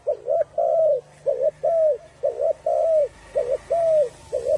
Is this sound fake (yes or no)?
no